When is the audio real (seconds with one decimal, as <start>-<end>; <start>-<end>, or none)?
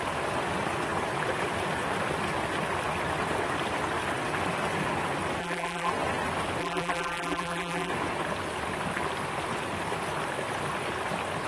0.0-5.4; 5.9-6.6; 7.9-11.5